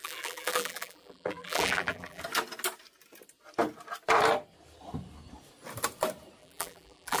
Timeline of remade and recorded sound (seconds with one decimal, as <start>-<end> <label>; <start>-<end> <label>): 0.0-2.2 remade; 2.2-6.4 recorded; 6.4-7.2 remade